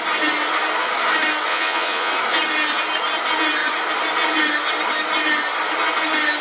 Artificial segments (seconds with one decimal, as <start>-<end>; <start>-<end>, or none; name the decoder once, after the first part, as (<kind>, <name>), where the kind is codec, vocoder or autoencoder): 1.5-2.1 (vocoder, Vocos)